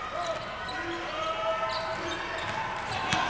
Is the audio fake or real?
real